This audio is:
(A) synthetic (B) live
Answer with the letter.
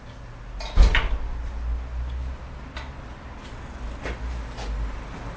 B